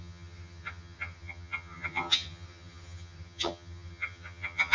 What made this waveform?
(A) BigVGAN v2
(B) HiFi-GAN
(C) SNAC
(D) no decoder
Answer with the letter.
B